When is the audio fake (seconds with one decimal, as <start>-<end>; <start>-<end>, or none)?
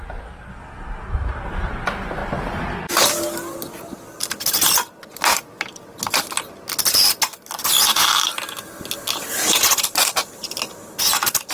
none